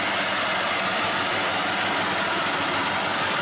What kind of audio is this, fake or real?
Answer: real